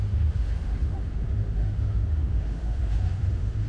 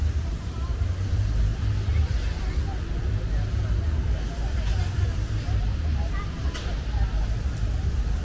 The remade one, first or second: first